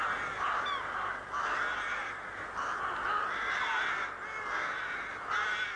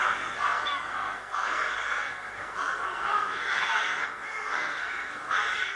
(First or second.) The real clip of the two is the first